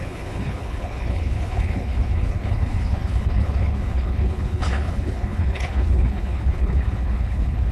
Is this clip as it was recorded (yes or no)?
no